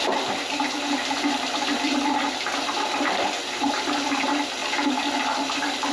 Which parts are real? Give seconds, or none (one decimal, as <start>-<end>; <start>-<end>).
4.6-5.2